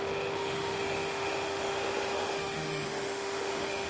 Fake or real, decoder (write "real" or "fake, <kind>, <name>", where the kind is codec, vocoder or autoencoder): fake, autoencoder, DAC-VAE